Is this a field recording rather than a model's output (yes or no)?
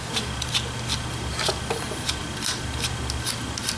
yes